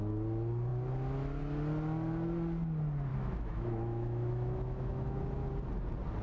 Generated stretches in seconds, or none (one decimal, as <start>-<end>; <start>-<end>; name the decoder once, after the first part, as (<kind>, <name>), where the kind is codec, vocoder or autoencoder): 3.1-5.2 (autoencoder, DAC-VAE)